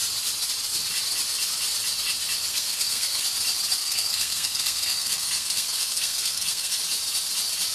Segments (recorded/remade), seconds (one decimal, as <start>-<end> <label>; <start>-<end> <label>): 0.0-2.5 recorded; 2.5-3.2 remade; 3.2-3.8 recorded; 3.8-6.8 remade; 6.8-7.7 recorded